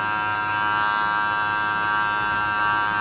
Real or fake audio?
real